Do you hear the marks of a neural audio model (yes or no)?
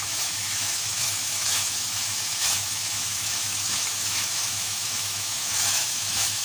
yes